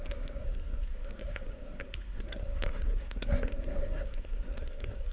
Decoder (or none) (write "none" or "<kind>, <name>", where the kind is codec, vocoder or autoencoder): codec, SNAC